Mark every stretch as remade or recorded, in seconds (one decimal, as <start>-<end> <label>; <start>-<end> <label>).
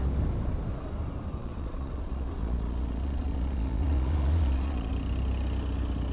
0.0-1.4 recorded; 1.4-4.9 remade; 4.9-6.1 recorded